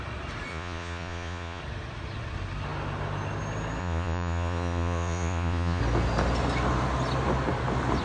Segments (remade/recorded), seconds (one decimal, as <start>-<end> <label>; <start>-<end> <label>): 0.0-0.5 recorded; 0.5-1.6 remade; 1.6-3.8 recorded; 3.8-5.8 remade; 5.8-8.0 recorded